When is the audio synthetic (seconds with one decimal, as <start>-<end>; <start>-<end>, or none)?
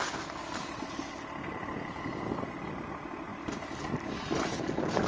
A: none